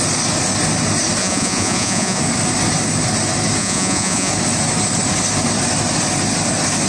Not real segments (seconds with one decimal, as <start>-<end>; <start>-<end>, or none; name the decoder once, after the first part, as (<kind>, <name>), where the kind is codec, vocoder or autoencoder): 1.2-2.2 (vocoder, Vocos); 3.6-4.3